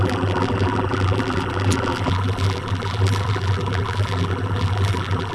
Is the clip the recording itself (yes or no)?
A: no